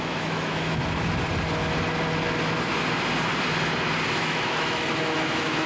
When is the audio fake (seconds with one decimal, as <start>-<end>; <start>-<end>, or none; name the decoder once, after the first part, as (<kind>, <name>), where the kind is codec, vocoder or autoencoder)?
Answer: 0.0-0.8 (autoencoder, DAC-VAE); 4.2-5.7